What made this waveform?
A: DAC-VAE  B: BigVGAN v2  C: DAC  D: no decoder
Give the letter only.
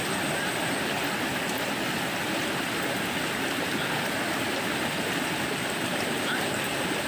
D